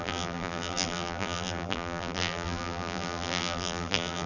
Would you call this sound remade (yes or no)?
yes